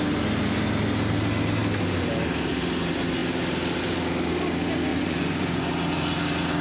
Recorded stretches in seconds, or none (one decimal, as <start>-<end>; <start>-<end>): 0.0-4.9; 5.7-6.6